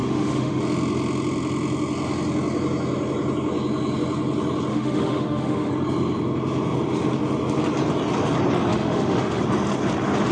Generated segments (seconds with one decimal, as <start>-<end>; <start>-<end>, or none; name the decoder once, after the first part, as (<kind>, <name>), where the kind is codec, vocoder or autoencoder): 0.0-0.6 (autoencoder, DAC-VAE); 4.7-5.7; 8.7-9.4